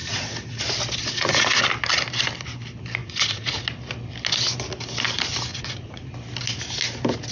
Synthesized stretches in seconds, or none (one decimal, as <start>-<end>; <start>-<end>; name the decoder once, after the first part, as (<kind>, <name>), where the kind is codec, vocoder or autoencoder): 0.0-0.6 (vocoder, Vocos); 1.0-1.6; 3.0-3.6; 5.5-6.1